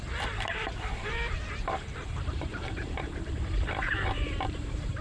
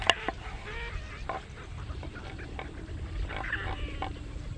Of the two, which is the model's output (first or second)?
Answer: first